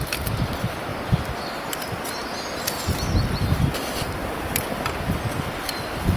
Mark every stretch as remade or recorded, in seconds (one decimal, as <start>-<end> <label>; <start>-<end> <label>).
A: 0.0-0.9 recorded; 0.9-1.8 remade; 1.8-4.2 recorded; 4.2-4.9 remade; 4.9-6.2 recorded